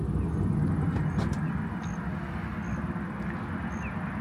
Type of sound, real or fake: real